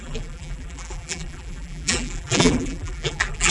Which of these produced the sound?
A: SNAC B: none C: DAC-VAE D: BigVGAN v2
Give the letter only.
D